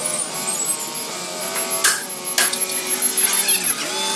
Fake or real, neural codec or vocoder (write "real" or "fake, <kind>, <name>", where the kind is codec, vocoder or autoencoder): real